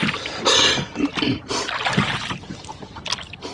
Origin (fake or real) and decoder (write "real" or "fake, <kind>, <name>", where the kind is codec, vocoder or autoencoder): real